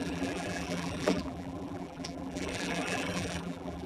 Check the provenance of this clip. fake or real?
fake